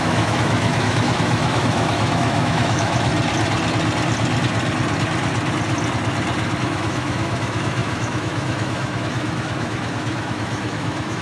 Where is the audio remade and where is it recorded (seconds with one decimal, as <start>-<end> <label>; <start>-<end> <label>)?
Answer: 0.0-3.1 remade; 3.1-6.6 recorded; 6.6-11.2 remade